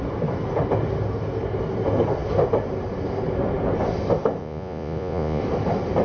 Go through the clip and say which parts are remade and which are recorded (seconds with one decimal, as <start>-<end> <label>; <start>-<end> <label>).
0.0-4.4 recorded; 4.4-5.4 remade; 5.4-6.0 recorded